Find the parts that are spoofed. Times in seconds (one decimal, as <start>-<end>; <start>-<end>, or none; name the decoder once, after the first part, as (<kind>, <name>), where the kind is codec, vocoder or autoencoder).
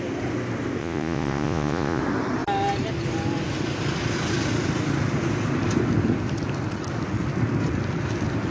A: 0.8-2.0 (vocoder, Vocos)